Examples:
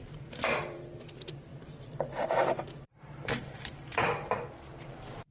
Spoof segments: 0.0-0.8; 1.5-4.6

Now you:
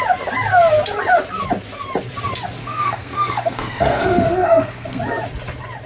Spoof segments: 2.6-5.0

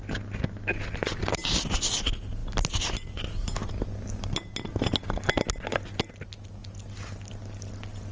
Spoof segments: none

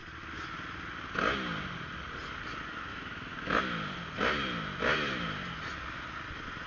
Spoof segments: 2.9-3.6

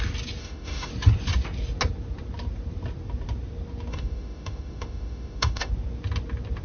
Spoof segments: 0.4-0.9; 3.9-5.7

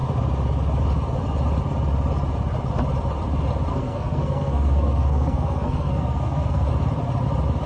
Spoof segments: 3.7-6.7

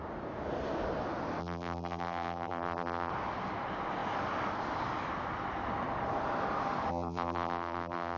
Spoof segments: 1.4-3.1; 6.9-8.2

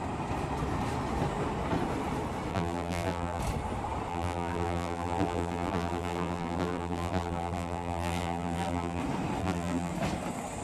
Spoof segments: 2.5-3.4; 4.1-9.0; 9.4-9.9